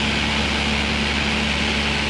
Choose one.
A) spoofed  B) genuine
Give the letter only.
B